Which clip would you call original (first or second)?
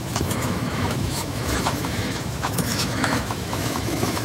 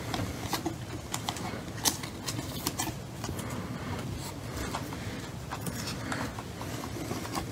second